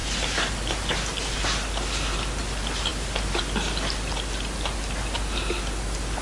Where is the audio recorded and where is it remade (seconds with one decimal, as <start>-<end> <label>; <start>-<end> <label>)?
0.0-6.2 recorded